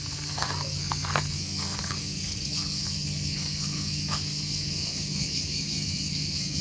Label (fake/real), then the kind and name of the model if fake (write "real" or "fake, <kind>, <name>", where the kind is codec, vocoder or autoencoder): fake, codec, SNAC